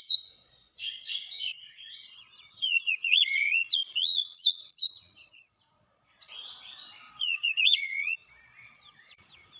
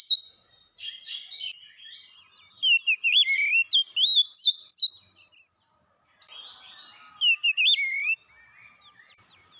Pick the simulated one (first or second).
first